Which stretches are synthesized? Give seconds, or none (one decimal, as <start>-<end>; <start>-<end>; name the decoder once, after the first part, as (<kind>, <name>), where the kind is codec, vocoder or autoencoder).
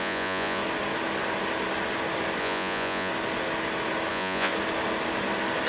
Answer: 0.0-0.6 (vocoder, Vocos); 2.4-3.1; 4.1-4.5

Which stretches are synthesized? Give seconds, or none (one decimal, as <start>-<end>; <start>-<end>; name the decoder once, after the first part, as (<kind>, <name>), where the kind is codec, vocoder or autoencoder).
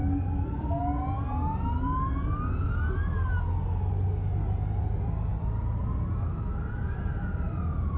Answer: 0.0-0.8 (codec, DAC)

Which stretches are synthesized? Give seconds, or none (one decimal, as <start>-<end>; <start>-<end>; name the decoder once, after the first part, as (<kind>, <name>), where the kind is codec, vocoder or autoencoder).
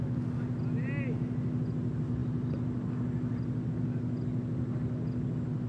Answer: none